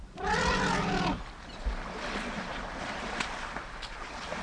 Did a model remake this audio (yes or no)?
no